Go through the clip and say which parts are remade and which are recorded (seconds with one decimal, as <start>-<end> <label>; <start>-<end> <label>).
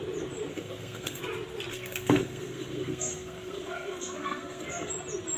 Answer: 0.0-0.5 recorded; 0.5-1.2 remade; 1.2-1.7 recorded; 1.7-4.9 remade; 4.9-5.4 recorded